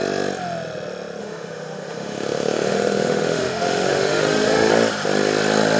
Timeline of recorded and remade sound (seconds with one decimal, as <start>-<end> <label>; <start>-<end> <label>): 0.0-1.2 recorded; 1.2-4.7 remade; 4.7-5.8 recorded